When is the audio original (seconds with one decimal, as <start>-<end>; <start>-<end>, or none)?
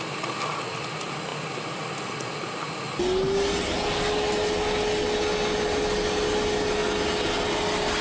0.0-8.0